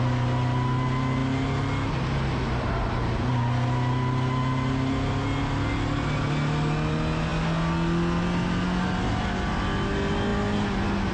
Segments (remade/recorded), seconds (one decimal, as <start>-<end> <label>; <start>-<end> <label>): 0.0-11.1 recorded